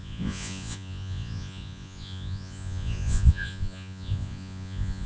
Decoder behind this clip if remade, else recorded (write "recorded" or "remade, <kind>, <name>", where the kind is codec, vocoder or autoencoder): remade, vocoder, Vocos